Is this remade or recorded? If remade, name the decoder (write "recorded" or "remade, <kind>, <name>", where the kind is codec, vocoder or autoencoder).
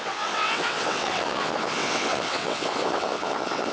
remade, vocoder, WaveNeXt